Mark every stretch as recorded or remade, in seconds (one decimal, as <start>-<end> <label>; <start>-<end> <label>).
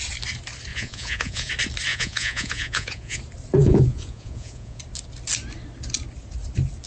0.0-0.7 recorded; 0.7-1.5 remade; 1.5-1.9 recorded; 1.9-3.2 remade; 3.2-3.6 recorded; 3.6-4.8 remade; 4.8-6.9 recorded